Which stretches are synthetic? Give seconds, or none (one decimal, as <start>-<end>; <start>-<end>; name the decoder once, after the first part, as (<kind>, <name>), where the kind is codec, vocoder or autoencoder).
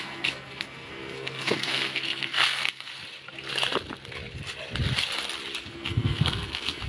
0.0-2.9 (codec, SNAC); 5.6-6.9